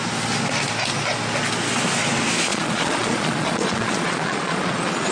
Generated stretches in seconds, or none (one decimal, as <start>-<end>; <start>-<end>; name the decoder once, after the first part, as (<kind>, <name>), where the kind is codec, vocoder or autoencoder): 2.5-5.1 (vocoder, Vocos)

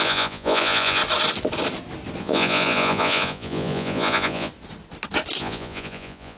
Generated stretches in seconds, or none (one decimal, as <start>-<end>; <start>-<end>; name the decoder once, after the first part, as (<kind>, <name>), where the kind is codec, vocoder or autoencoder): 0.0-1.0 (vocoder, Vocos); 2.2-4.5; 5.4-6.4

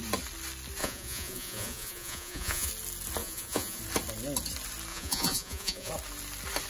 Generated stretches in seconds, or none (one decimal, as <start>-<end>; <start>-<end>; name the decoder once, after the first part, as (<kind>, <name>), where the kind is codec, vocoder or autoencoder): 0.8-2.7 (vocoder, Vocos); 3.2-3.8; 4.9-5.9

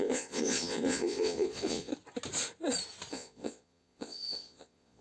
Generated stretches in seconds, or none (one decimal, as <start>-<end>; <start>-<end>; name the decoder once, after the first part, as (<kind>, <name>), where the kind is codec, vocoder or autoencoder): 0.0-1.9 (vocoder, Vocos); 3.1-5.0

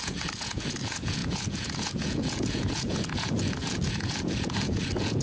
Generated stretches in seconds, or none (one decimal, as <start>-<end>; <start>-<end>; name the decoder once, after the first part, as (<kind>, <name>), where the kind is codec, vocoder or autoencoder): 0.0-5.2 (vocoder, Vocos)

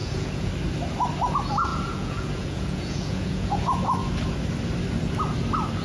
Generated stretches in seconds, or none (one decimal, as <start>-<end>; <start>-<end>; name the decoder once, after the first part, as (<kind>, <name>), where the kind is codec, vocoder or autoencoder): 0.0-0.5 (vocoder, Vocos); 1.7-3.6